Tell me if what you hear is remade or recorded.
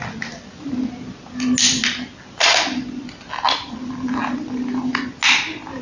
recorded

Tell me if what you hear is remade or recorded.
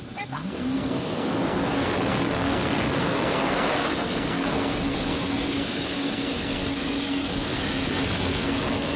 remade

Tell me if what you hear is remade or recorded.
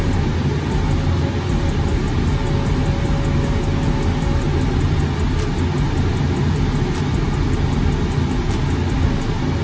recorded